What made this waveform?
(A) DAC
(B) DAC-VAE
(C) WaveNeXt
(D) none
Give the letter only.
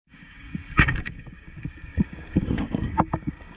A